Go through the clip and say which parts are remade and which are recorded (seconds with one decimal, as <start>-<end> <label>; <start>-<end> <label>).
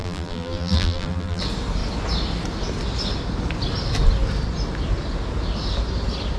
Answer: 0.0-1.4 remade; 1.4-6.4 recorded